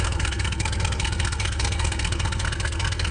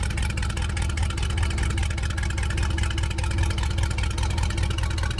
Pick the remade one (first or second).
first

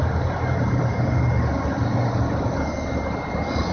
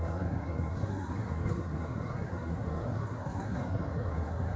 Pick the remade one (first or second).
second